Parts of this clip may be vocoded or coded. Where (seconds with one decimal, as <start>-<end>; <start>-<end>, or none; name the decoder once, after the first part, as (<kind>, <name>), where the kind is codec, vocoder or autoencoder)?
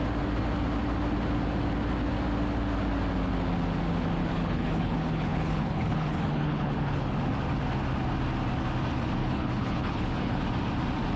4.2-7.1 (codec, HILCodec); 9.2-10.4